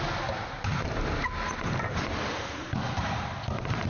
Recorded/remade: recorded